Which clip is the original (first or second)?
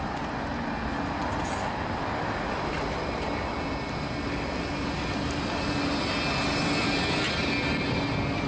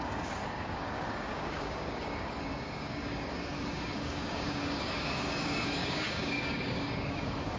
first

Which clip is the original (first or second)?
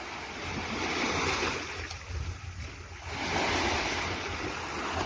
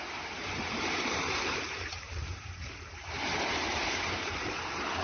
first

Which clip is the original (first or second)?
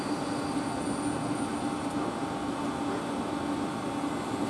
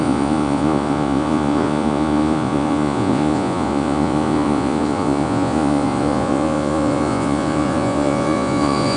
first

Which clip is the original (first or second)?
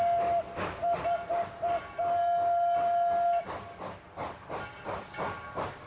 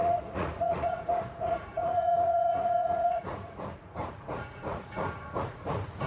first